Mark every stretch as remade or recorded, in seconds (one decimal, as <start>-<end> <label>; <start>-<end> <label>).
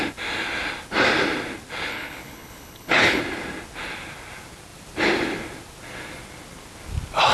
0.0-1.9 recorded; 1.9-3.2 remade; 3.2-7.3 recorded